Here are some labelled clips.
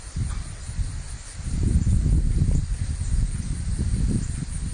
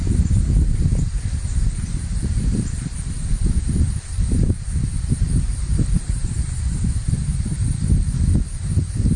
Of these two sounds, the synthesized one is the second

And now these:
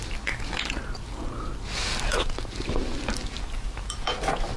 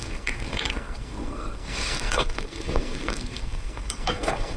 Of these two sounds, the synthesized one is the second